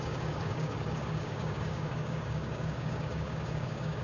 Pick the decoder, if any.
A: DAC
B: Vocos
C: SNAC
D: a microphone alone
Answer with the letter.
A